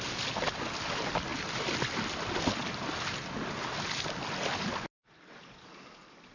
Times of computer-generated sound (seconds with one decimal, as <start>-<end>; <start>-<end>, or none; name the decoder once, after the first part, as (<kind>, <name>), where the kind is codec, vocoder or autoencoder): none